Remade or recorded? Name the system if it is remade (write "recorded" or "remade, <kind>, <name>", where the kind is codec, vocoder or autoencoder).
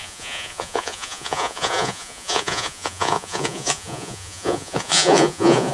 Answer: remade, vocoder, Vocos